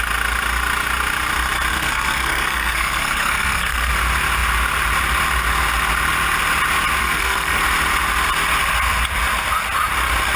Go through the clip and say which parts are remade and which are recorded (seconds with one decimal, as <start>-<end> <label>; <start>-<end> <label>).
0.0-1.7 recorded; 1.7-3.9 remade; 3.9-7.0 recorded; 7.0-7.6 remade; 7.6-10.4 recorded